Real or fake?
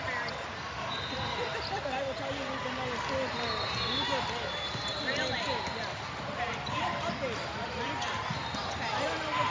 real